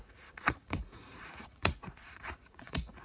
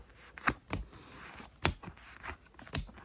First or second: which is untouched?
second